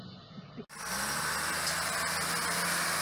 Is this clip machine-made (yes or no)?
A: no